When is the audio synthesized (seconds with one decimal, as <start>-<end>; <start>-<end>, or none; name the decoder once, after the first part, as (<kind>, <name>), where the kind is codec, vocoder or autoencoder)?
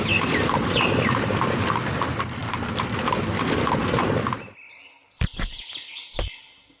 none